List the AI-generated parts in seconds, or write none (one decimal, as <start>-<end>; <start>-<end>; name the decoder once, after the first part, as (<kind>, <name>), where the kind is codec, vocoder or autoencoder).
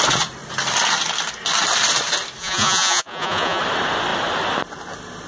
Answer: 2.4-3.6 (vocoder, Vocos)